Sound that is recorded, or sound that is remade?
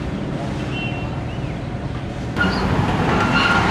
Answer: recorded